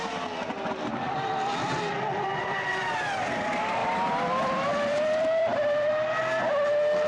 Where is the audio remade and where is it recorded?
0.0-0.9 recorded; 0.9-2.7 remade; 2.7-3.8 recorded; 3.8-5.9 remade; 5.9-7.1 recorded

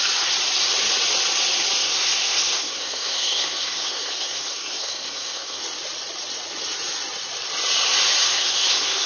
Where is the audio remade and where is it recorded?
0.0-1.8 recorded; 1.8-5.6 remade; 5.6-8.2 recorded; 8.2-9.1 remade

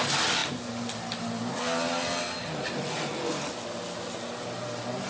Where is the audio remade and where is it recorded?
0.0-5.1 recorded

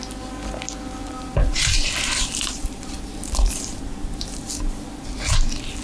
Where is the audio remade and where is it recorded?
0.0-1.0 recorded; 1.0-4.5 remade; 4.5-5.8 recorded

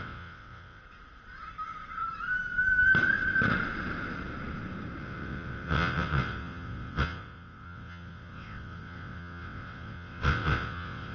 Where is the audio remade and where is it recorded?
0.0-0.8 remade; 0.8-5.0 recorded; 5.0-11.1 remade

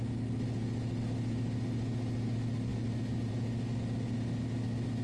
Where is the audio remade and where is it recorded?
0.0-5.0 recorded

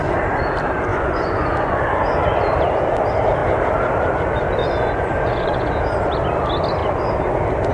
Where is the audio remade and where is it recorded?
0.0-0.9 recorded; 0.9-1.8 remade; 1.8-4.6 recorded; 4.6-5.7 remade; 5.7-7.7 recorded